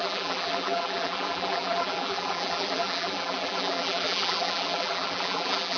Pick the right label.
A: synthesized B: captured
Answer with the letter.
A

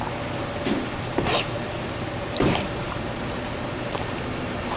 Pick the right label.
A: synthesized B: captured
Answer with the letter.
A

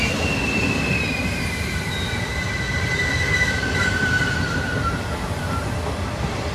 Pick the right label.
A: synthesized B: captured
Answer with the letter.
B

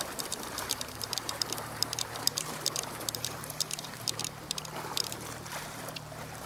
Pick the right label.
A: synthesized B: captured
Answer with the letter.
A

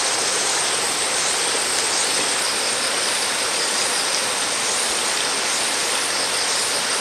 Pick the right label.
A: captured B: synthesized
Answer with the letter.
A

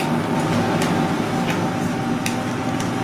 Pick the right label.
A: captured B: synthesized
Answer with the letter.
A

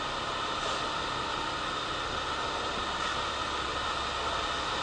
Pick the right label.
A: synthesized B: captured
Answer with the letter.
B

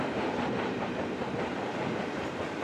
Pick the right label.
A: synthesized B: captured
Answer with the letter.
A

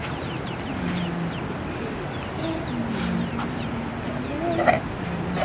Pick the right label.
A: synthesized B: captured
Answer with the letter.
B